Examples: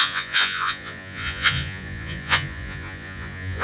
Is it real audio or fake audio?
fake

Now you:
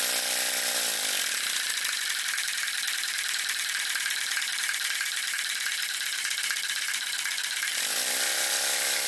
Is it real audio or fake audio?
fake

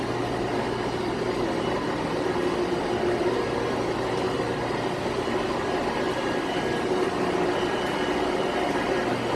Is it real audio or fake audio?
real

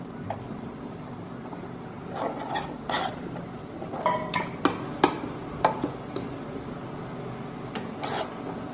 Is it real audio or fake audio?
real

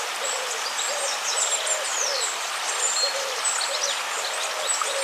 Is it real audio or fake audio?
real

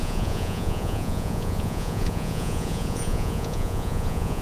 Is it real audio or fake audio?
fake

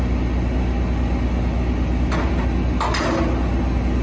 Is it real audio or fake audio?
real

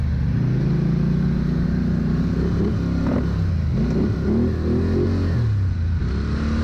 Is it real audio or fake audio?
real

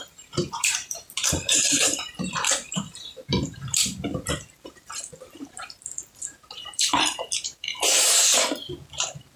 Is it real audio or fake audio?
fake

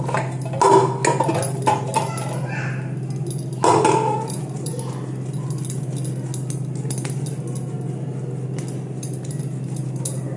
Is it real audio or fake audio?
real